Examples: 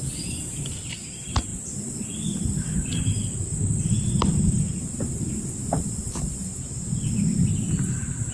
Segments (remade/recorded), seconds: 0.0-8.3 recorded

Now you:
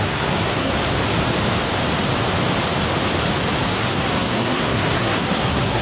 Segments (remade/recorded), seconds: 0.0-0.7 remade; 0.7-3.7 recorded; 3.7-5.8 remade

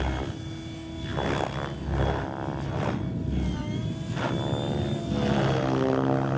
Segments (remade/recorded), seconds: 0.0-6.4 recorded

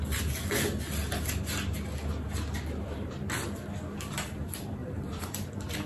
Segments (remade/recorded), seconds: 0.0-4.8 recorded; 4.8-5.4 remade; 5.4-5.9 recorded

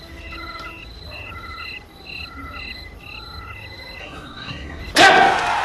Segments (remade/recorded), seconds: 0.0-4.0 recorded; 4.0-4.8 remade; 4.8-5.6 recorded

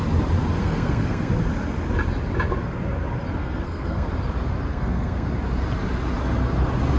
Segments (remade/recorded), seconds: 0.0-0.6 recorded; 0.6-1.3 remade; 1.3-3.4 recorded; 3.4-4.1 remade; 4.1-4.7 recorded; 4.7-5.3 remade; 5.3-7.0 recorded

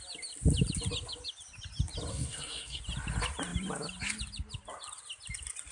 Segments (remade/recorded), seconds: 0.0-2.1 recorded; 2.1-2.8 remade; 2.8-5.7 recorded

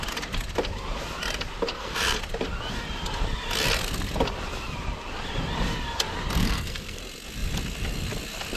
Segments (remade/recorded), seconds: 0.0-1.7 recorded; 1.7-2.2 remade; 2.2-6.4 recorded; 6.4-7.0 remade; 7.0-8.6 recorded